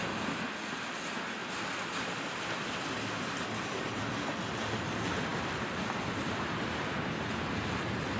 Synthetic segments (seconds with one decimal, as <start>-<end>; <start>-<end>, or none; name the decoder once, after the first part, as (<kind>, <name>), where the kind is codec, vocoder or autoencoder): 1.4-4.0 (vocoder, BigVGAN v2); 5.3-6.5